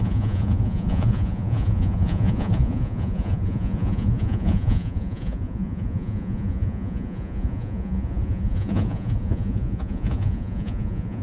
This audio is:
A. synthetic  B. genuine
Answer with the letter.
A